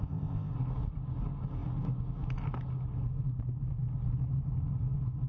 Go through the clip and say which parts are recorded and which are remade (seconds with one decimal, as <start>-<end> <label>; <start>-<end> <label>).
0.0-0.5 remade; 0.5-5.3 recorded